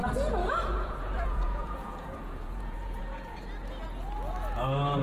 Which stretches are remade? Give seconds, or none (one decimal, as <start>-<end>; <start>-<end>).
0.0-3.0